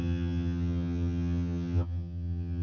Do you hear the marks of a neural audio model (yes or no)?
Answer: yes